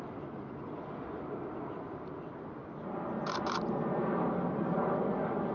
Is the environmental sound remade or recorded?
recorded